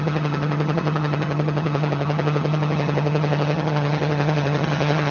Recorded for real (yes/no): no